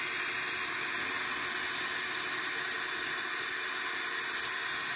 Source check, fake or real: real